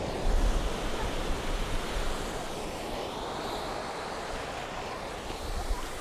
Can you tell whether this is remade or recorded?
remade